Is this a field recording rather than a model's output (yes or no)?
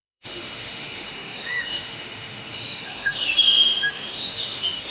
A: no